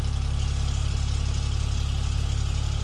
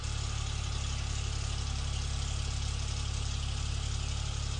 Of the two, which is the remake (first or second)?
second